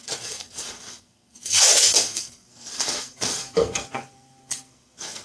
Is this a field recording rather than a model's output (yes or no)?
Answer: no